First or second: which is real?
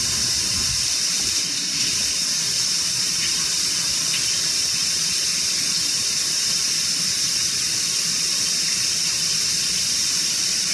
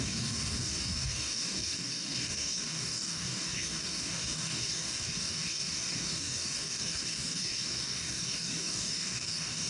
first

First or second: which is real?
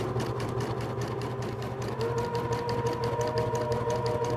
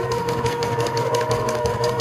first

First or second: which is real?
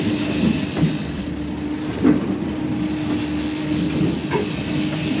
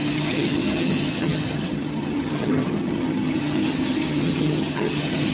first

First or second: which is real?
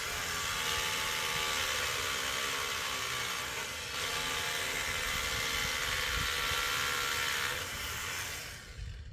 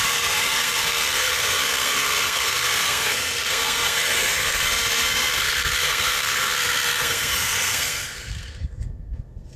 first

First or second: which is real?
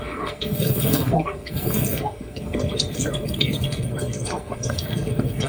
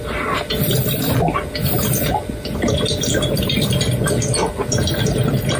second